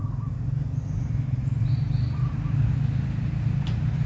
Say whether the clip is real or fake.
real